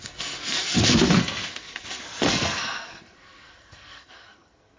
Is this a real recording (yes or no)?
no